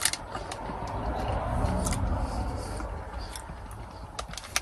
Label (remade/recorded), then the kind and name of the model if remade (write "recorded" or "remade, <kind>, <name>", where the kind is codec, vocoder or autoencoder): recorded